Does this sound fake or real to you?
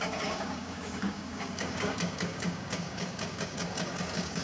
fake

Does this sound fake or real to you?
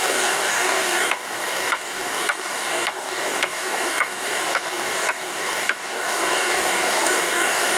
fake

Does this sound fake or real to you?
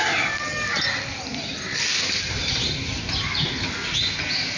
real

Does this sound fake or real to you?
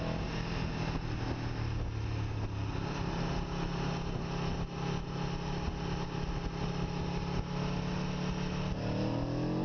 real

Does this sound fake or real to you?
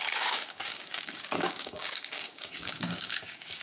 fake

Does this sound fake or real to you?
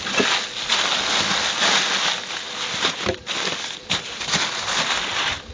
real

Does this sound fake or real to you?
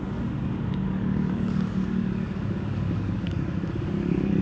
fake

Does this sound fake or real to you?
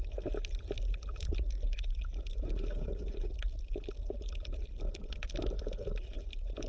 real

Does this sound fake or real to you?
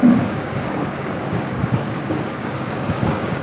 fake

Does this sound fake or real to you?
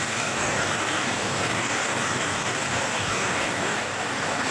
fake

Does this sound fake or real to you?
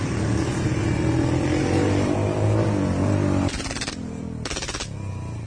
real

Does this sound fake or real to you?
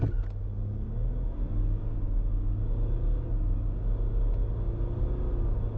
real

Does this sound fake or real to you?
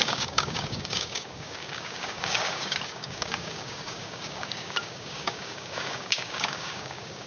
fake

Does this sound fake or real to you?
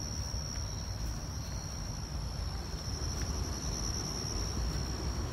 real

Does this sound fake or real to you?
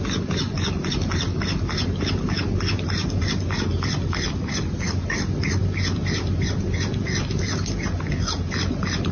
real